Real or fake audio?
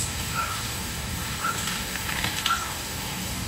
fake